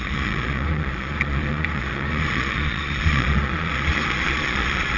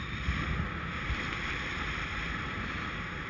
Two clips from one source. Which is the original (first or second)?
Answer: second